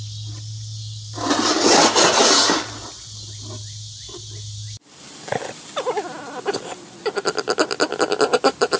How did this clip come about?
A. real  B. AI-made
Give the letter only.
A